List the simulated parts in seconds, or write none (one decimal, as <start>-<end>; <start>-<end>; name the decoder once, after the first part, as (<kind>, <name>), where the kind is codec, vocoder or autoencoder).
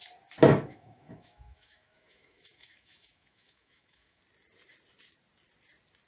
0.5-4.2 (autoencoder, DAC-VAE)